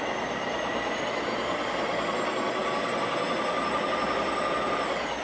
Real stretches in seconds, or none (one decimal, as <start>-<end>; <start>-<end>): 0.0-5.2